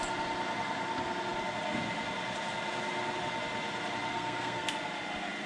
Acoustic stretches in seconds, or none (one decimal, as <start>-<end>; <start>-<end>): 0.0-4.1; 4.7-5.5